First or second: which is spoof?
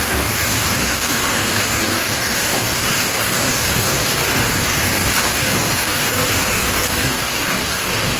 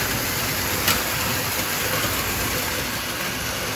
first